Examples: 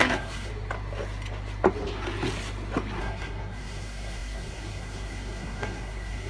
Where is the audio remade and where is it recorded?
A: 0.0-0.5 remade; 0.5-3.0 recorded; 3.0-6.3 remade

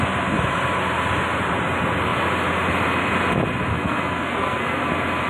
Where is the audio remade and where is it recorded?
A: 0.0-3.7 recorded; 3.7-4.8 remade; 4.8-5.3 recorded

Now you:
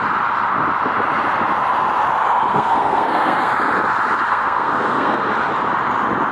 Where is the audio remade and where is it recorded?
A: 0.0-2.5 recorded; 2.5-3.5 remade; 3.5-4.3 recorded; 4.3-5.3 remade; 5.3-6.3 recorded